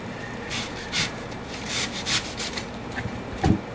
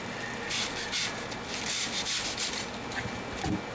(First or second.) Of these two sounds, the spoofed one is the first